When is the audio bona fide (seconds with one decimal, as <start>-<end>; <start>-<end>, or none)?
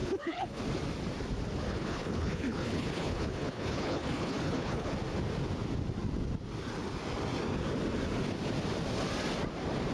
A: 0.6-1.7; 4.9-9.9